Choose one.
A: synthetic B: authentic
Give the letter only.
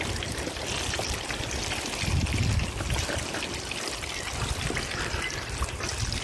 B